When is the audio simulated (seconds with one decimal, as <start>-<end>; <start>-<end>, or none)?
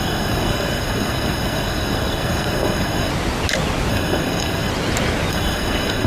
0.0-3.1; 3.9-4.7; 5.3-6.1